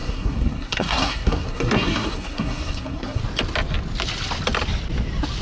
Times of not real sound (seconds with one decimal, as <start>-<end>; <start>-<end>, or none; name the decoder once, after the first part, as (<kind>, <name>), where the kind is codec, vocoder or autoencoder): 0.0-3.2 (codec, SNAC)